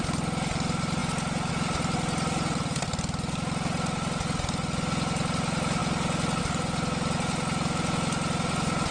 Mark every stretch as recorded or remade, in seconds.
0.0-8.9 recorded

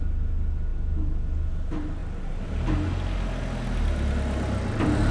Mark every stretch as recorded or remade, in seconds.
0.0-5.1 recorded

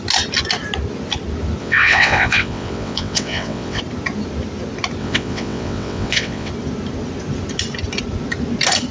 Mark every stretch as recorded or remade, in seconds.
0.0-1.6 recorded; 1.6-3.8 remade; 3.8-5.0 recorded; 5.0-6.5 remade; 6.5-8.9 recorded

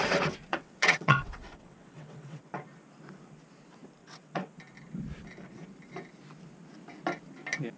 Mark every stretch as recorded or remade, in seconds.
0.0-0.5 recorded; 0.5-2.4 remade; 2.4-4.0 recorded; 4.0-4.5 remade; 4.5-7.8 recorded

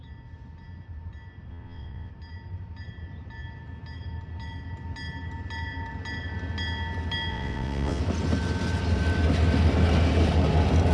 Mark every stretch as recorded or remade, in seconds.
0.0-1.5 recorded; 1.5-2.1 remade; 2.1-7.3 recorded; 7.3-8.0 remade; 8.0-10.9 recorded

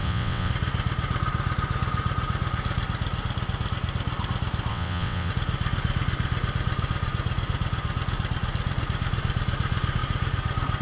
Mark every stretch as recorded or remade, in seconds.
0.0-0.5 remade; 0.5-4.7 recorded; 4.7-5.3 remade; 5.3-10.8 recorded